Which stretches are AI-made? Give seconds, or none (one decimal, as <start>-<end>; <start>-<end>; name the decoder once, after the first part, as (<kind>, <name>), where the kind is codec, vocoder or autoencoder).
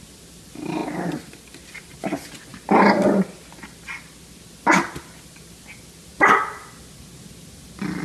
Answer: none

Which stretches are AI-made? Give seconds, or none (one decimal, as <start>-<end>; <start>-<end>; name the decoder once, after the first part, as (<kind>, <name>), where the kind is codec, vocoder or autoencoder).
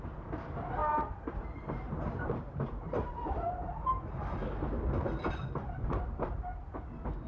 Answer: 0.0-4.2 (vocoder, BigVGAN v2); 5.3-7.3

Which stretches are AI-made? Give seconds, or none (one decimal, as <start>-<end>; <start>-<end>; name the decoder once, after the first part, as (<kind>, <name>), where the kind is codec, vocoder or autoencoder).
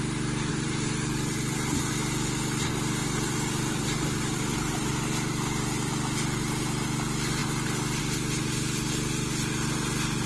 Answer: 0.5-1.9 (vocoder, BigVGAN v2); 3.0-5.0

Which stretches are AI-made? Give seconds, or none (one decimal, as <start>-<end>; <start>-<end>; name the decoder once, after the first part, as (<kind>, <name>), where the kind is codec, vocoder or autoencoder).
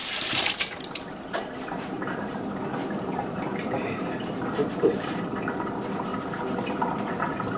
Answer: 0.0-6.1 (vocoder, BigVGAN v2); 7.1-7.6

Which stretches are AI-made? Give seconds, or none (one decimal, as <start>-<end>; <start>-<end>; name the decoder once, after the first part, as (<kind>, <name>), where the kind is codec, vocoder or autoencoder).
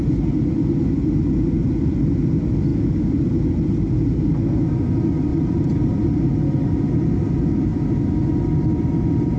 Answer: 5.3-6.1 (vocoder, BigVGAN v2)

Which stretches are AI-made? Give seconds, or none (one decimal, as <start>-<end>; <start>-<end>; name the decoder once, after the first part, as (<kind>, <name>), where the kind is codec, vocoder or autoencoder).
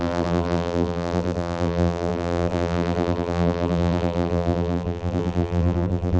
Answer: 0.0-6.2 (vocoder, BigVGAN v2)